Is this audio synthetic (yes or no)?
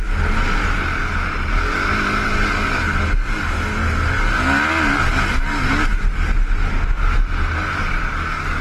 no